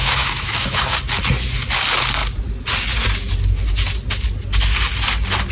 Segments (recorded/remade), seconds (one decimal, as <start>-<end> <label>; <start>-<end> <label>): 0.0-1.0 remade; 1.0-5.5 recorded